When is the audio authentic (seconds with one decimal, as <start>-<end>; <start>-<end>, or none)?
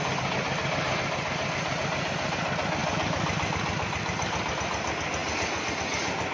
0.0-6.3